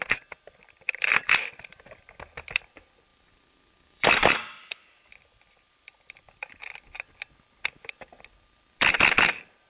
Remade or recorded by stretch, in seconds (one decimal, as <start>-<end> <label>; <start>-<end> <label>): 0.0-3.1 recorded; 3.1-6.4 remade; 6.4-9.7 recorded